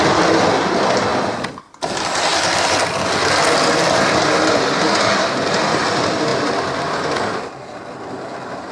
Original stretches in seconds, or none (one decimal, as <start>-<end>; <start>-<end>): 0.0-8.7